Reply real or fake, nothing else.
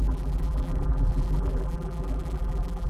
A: fake